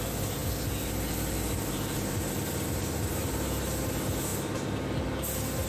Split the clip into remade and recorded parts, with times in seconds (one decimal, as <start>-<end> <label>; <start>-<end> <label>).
0.0-5.7 recorded